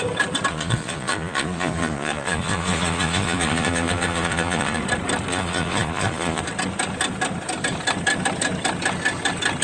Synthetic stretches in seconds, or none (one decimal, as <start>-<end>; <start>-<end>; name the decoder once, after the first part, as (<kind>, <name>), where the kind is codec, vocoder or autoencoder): 0.5-4.8 (vocoder, Vocos); 5.3-6.4